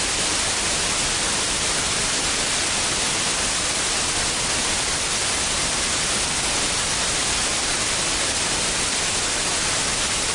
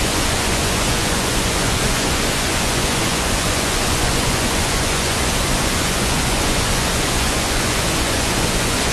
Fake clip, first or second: second